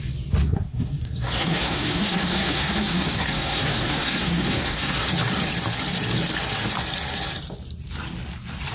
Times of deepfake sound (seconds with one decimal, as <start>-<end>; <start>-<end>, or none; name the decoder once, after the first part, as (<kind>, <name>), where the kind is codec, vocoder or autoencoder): 0.4-5.1 (codec, SNAC)